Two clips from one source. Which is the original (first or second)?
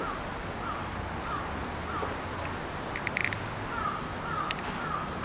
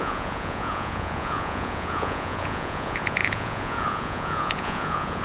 first